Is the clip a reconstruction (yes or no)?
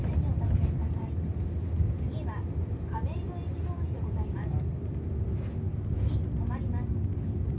no